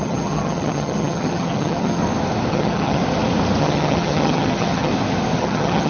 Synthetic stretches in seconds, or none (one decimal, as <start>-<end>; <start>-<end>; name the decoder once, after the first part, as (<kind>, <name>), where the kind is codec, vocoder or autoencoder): 0.0-2.0 (vocoder, HiFi-GAN); 2.5-3.0; 3.6-4.9; 5.4-5.9